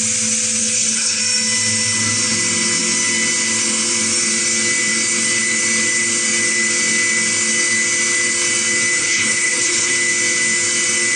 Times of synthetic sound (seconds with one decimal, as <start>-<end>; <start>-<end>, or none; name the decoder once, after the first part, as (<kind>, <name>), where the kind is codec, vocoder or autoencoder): 0.6-1.2 (codec, HILCodec); 9.0-9.9

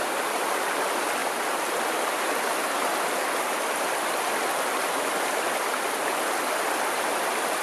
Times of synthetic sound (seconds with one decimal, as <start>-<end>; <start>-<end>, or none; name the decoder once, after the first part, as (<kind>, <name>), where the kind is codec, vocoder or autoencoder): none

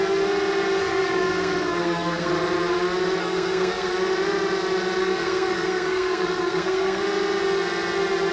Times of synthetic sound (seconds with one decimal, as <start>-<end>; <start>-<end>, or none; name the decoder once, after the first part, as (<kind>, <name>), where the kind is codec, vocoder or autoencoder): 0.8-2.3 (codec, SNAC); 3.2-3.9; 5.0-7.0

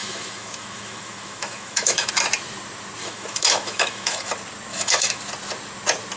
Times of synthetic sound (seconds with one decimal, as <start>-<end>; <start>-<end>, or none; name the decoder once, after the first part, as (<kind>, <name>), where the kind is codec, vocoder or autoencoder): 0.0-2.1 (autoencoder, DAC-VAE); 3.0-4.3; 4.7-5.2

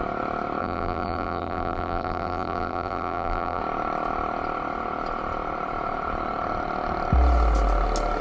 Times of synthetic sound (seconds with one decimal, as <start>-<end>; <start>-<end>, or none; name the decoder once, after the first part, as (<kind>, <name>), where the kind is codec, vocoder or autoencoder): 0.6-3.6 (vocoder, BigVGAN v2)

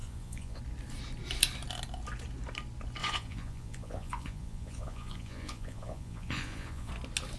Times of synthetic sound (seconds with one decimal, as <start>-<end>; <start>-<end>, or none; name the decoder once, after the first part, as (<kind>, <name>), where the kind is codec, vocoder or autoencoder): 0.0-0.6 (vocoder, Vocos); 3.0-6.9

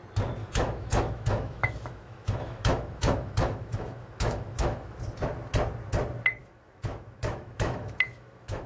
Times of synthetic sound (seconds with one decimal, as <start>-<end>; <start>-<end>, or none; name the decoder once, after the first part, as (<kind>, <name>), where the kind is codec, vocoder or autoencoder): 0.4-5.0 (autoencoder, DAC-VAE); 6.4-8.7

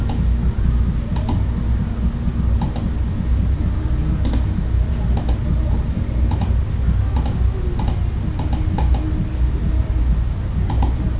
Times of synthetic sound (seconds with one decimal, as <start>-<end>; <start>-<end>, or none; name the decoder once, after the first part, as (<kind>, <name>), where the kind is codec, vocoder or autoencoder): none